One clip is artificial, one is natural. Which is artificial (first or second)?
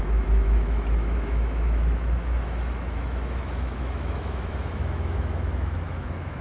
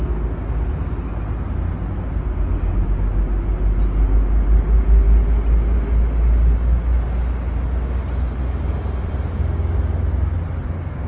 first